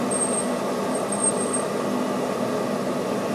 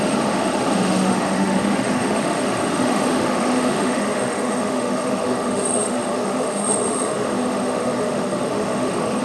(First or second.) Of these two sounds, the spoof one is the second